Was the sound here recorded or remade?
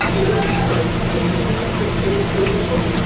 recorded